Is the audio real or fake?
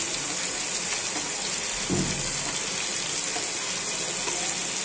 real